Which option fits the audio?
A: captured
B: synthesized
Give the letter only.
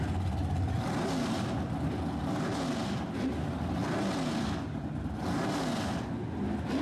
A